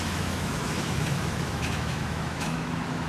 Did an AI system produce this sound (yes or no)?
yes